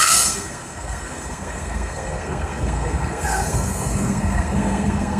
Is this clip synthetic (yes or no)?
yes